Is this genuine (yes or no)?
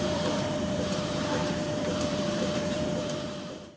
no